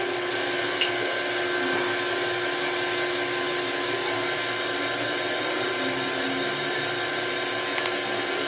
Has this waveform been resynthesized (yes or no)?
no